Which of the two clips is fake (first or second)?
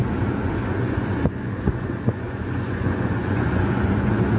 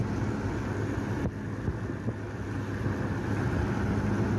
first